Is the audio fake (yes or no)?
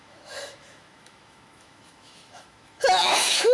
yes